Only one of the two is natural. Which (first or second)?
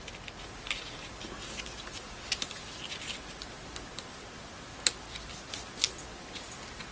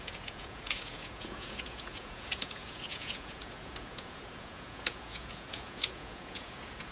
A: first